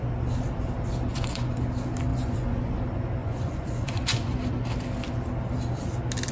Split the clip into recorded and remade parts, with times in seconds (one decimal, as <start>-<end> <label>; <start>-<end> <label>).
0.0-1.1 recorded; 1.1-1.6 remade; 1.6-2.1 recorded; 2.1-2.8 remade; 2.8-3.2 recorded; 3.2-4.4 remade; 4.4-6.3 recorded